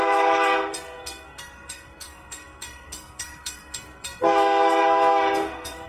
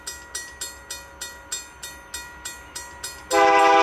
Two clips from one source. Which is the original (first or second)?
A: second